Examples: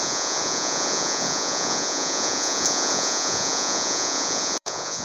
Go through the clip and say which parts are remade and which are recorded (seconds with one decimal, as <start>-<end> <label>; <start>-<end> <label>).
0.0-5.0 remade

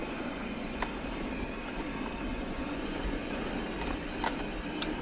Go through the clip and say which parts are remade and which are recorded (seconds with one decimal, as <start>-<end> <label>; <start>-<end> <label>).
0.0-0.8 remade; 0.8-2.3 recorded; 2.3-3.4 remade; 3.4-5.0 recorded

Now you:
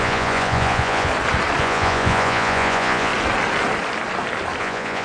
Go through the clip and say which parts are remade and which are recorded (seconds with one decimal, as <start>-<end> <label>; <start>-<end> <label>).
0.0-1.1 remade; 1.1-1.6 recorded; 1.6-3.1 remade; 3.1-4.6 recorded; 4.6-5.0 remade